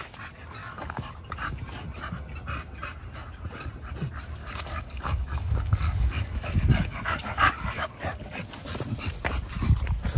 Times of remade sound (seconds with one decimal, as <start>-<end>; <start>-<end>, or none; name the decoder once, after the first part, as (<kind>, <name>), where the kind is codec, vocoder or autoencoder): 0.6-1.1 (codec, DAC); 4.4-8.0